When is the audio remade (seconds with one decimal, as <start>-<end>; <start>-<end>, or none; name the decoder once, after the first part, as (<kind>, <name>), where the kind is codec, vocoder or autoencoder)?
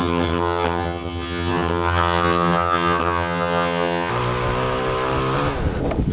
0.0-4.1 (vocoder, HiFi-GAN)